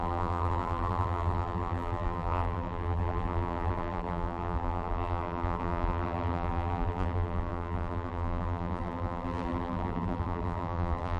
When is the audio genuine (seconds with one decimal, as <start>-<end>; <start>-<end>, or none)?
none